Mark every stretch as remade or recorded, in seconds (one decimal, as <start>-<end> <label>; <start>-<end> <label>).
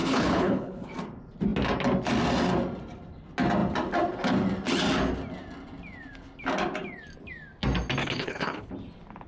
0.0-0.9 remade; 0.9-8.0 recorded; 8.0-8.7 remade; 8.7-9.3 recorded